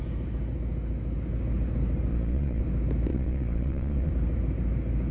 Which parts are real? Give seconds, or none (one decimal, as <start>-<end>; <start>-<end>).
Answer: 0.0-2.1; 2.6-3.1; 4.1-5.1